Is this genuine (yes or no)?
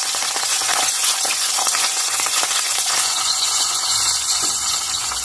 no